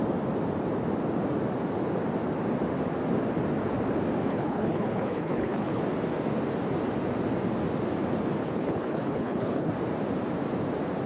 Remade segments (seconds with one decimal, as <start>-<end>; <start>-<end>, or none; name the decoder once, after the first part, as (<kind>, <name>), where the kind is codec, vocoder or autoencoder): 4.3-5.8 (codec, HILCodec); 8.4-9.7

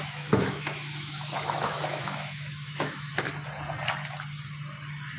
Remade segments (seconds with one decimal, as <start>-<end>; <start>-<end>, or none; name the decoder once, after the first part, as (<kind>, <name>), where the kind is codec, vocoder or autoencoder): 0.0-3.1 (autoencoder, DAC-VAE)

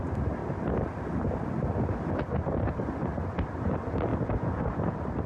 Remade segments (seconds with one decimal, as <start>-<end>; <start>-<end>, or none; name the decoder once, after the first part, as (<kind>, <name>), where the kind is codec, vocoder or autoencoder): none

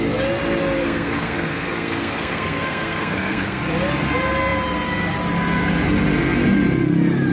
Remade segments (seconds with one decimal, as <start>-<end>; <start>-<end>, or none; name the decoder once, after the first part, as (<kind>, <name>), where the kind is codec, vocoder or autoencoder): 0.8-3.6 (codec, SNAC)

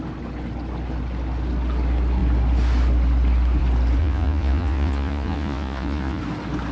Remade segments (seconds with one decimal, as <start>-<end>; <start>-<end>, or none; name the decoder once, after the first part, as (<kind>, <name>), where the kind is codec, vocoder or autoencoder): 4.0-6.2 (vocoder, Vocos)

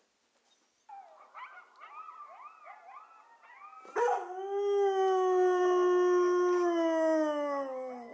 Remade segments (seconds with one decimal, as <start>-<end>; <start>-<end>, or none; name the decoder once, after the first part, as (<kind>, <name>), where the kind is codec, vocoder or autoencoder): none

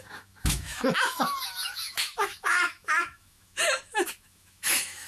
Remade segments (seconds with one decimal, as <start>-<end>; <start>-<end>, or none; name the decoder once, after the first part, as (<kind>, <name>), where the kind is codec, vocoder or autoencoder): 0.0-5.1 (autoencoder, DAC-VAE)